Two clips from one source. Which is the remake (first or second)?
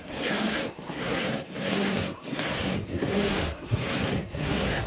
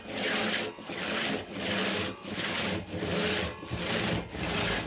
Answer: first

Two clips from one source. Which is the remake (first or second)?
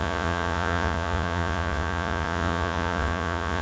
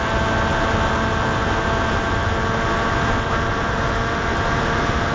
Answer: first